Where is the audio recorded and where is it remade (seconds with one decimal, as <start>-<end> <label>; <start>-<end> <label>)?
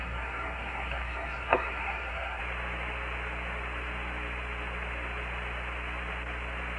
0.0-2.4 remade; 2.4-6.8 recorded